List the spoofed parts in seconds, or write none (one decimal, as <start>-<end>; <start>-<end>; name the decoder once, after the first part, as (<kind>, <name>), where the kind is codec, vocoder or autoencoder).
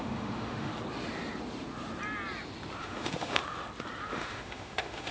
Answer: 0.0-0.7 (autoencoder, DAC-VAE); 2.8-3.4; 4.1-5.1